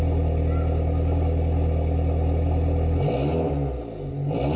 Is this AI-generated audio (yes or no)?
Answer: no